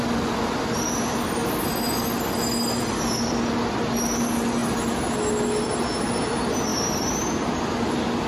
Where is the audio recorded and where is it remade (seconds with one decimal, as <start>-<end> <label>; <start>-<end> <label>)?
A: 0.0-6.7 recorded; 6.7-7.5 remade; 7.5-8.3 recorded